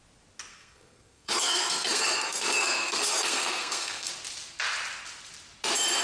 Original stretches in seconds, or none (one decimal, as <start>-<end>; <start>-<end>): 0.0-0.5; 4.1-6.0